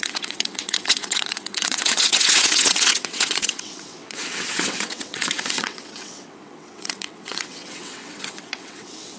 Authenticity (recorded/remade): remade